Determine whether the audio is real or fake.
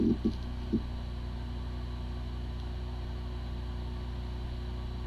real